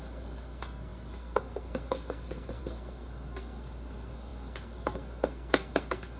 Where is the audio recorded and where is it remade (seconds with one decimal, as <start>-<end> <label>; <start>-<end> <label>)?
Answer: 0.0-6.2 remade